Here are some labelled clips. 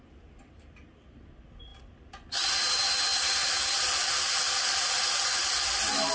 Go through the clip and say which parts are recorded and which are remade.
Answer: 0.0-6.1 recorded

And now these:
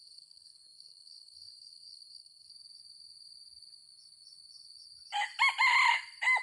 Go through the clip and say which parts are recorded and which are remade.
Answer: 0.0-2.5 remade; 2.5-6.4 recorded